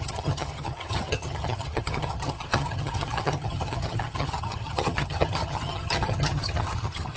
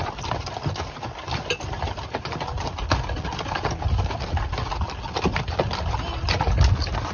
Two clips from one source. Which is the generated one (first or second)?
first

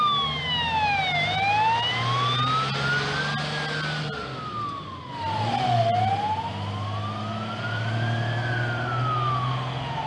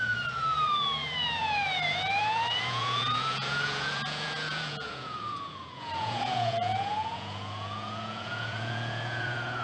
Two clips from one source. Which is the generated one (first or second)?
second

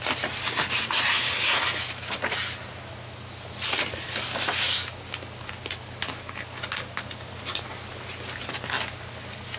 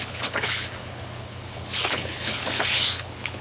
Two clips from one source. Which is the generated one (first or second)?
second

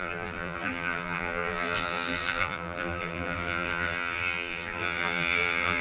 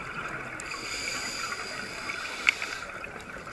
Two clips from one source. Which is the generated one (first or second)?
first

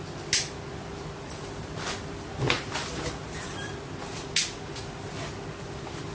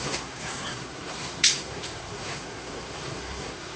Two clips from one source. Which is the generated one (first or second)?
second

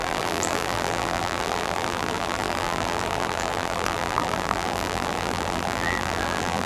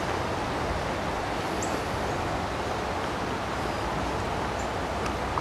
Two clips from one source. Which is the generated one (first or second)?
first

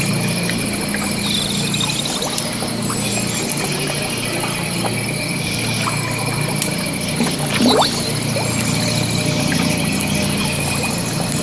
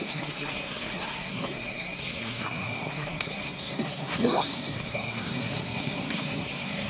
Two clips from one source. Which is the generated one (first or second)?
second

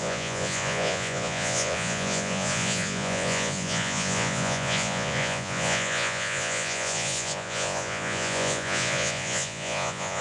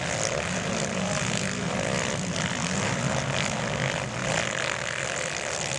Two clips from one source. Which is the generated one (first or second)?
first